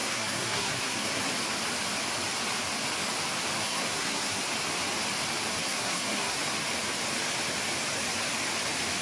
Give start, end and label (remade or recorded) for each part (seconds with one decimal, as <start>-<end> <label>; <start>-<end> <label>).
0.0-1.3 remade; 1.3-3.6 recorded; 3.6-4.4 remade; 4.4-5.6 recorded; 5.6-6.4 remade; 6.4-9.0 recorded